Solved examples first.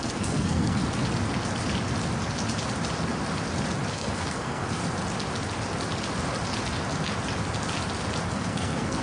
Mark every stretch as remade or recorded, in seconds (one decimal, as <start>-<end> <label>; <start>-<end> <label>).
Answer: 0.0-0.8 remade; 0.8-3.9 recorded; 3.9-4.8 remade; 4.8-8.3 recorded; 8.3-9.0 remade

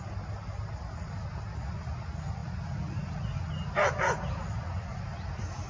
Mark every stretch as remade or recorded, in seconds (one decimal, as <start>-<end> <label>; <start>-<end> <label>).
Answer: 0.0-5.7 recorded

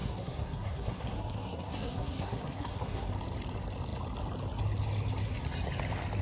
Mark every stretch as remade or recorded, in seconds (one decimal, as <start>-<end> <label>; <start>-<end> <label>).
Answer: 0.0-3.1 remade; 3.1-6.2 recorded

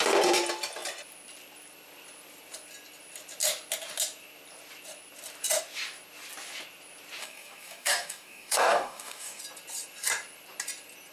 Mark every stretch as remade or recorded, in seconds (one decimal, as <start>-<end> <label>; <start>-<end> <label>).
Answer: 0.0-7.2 recorded; 7.2-9.4 remade; 9.4-11.1 recorded

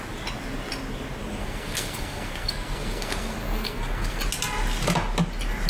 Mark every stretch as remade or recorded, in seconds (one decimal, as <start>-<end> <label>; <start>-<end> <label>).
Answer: 0.0-1.4 recorded; 1.4-4.2 remade; 4.2-5.7 recorded